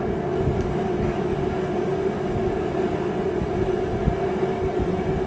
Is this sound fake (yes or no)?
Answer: no